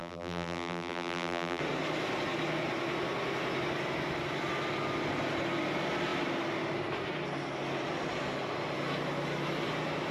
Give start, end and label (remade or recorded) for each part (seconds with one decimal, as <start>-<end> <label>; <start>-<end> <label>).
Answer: 0.0-1.6 remade; 1.6-10.1 recorded